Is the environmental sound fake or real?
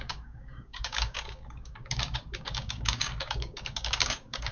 fake